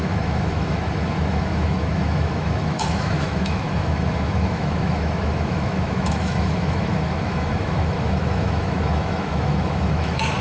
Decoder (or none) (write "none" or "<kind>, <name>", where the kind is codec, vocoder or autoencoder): autoencoder, DAC-VAE